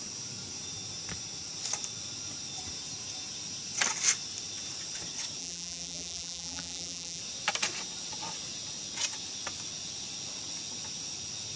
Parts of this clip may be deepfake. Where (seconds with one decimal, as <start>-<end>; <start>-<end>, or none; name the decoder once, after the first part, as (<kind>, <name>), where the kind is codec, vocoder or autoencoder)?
5.4-7.2 (vocoder, BigVGAN v2)